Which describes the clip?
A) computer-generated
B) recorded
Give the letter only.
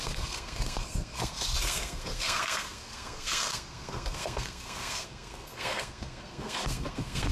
A